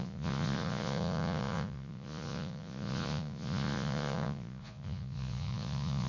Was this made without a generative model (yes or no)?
no